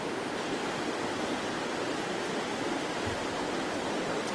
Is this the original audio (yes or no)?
yes